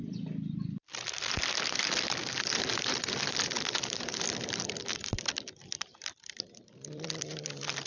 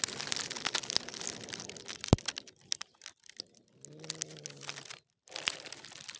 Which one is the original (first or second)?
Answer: second